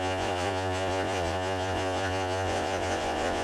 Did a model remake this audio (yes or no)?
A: yes